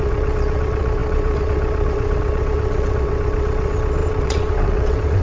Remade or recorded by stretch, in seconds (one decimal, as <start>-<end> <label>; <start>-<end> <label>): 0.0-5.2 remade